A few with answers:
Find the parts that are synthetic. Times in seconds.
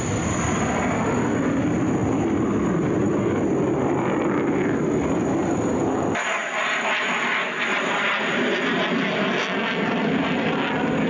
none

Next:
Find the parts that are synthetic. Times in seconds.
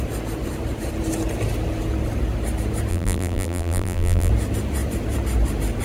2.9-4.3 (vocoder, BigVGAN v2)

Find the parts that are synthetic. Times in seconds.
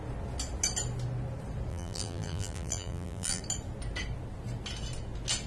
1.7-3.4 (vocoder, BigVGAN v2)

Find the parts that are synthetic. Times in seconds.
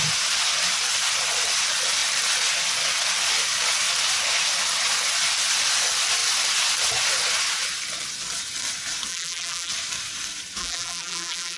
9.1-9.7 (vocoder, BigVGAN v2); 10.6-11.6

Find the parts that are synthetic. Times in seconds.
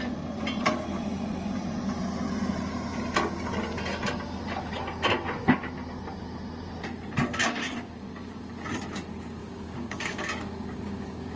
7.4-7.9 (codec, DAC); 9.4-11.4